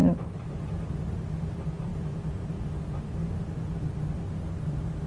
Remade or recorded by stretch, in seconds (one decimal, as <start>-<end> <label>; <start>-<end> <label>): 0.0-5.1 recorded